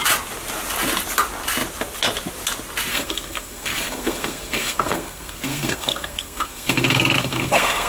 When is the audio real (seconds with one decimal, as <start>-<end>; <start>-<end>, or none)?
0.0-2.9